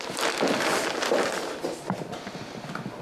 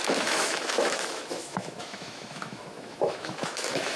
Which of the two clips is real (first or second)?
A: first